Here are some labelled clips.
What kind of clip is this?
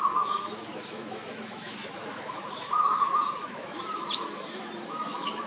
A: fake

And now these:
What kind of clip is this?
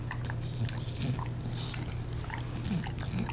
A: real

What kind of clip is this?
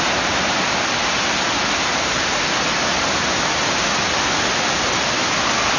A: real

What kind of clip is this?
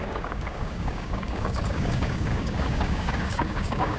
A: fake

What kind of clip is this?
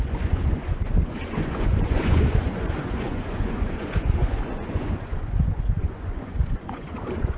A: fake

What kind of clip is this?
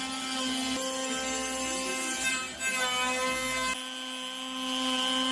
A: real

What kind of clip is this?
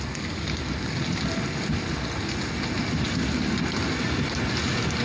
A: real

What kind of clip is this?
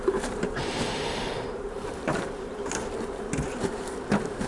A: fake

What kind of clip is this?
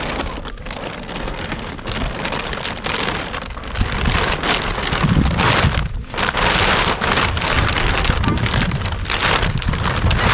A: real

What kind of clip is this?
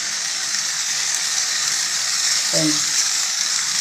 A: fake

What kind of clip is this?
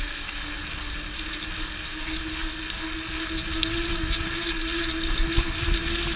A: real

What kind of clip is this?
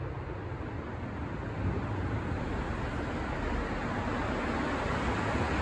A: real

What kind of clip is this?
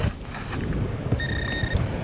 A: real